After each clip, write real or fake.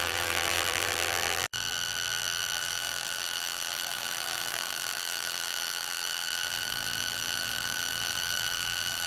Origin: fake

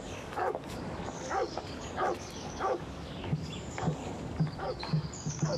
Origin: fake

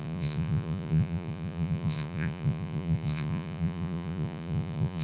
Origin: fake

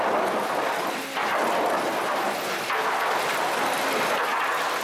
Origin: real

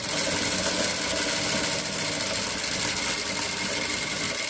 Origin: real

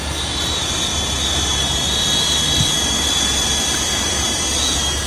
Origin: real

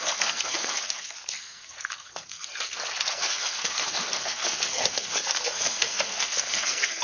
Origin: fake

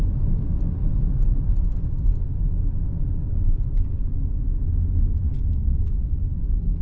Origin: real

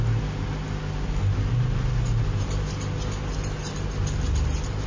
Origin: real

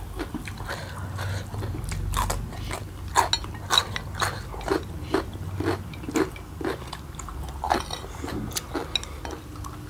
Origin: real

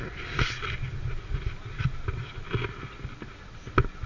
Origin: real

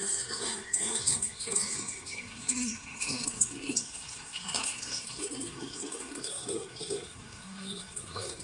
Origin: fake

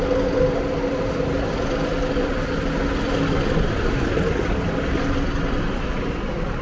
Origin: real